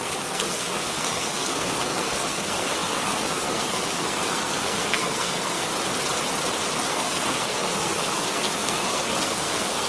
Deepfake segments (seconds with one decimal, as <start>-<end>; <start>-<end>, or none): 0.0-5.7; 6.9-9.9

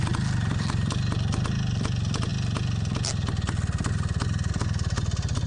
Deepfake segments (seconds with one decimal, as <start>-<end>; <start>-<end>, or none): none